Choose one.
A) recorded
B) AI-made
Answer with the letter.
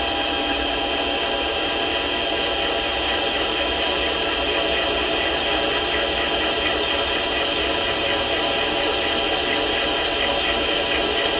A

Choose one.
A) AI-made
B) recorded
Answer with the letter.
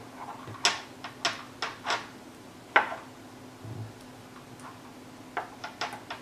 B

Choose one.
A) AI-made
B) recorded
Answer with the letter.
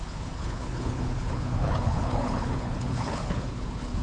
A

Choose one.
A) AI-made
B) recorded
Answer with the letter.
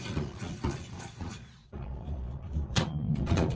A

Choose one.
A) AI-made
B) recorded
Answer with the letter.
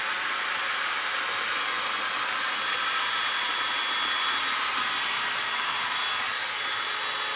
B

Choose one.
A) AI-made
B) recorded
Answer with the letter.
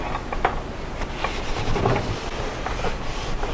B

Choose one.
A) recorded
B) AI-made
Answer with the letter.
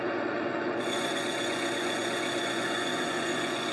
B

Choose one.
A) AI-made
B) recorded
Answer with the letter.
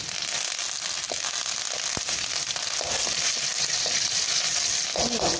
B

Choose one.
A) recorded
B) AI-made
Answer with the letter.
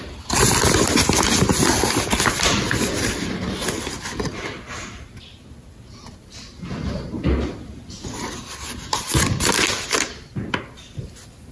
A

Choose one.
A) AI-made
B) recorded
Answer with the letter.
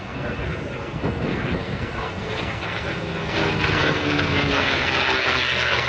A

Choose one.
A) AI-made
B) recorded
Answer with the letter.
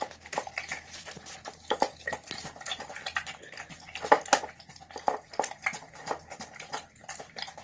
B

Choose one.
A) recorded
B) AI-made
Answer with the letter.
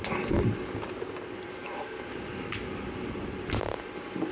A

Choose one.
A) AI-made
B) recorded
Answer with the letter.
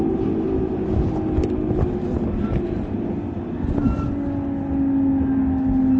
B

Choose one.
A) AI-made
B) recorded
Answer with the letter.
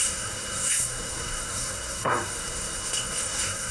A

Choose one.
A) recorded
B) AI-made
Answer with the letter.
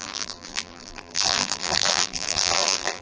B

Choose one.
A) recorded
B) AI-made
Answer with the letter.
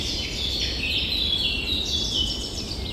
A